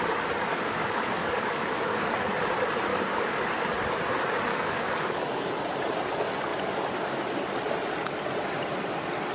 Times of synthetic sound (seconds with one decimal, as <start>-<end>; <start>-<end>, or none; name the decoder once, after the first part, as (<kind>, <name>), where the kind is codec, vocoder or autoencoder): 0.5-2.3 (codec, DAC); 2.9-3.5; 4.5-5.6